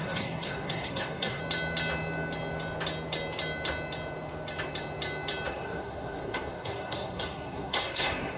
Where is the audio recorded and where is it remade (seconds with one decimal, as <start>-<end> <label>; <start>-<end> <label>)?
0.0-1.4 remade; 1.4-5.5 recorded; 5.5-8.4 remade